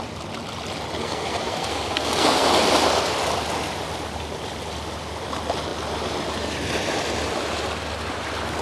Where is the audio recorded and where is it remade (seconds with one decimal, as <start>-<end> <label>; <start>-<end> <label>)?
0.0-1.0 recorded; 1.0-2.5 remade; 2.5-8.6 recorded